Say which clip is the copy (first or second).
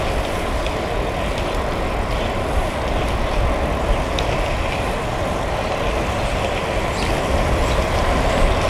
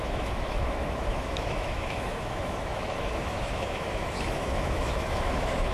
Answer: second